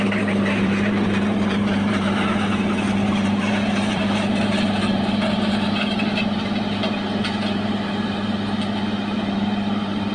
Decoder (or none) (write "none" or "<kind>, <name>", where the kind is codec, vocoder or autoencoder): vocoder, BigVGAN v2